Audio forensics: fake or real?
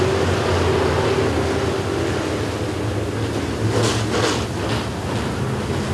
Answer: real